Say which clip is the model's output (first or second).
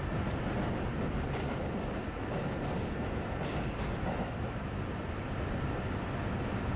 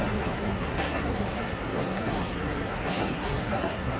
second